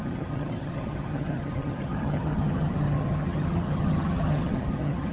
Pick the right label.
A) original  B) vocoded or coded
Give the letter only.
B